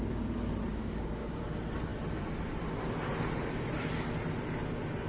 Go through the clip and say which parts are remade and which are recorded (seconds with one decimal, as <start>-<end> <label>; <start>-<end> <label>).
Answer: 0.0-0.7 recorded; 0.7-1.5 remade; 1.5-5.1 recorded